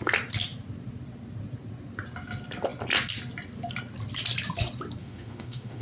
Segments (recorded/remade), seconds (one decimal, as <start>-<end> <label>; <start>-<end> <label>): 0.0-5.0 recorded; 5.0-5.8 remade